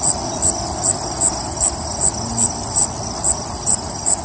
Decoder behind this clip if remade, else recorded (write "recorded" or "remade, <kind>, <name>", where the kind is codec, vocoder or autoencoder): recorded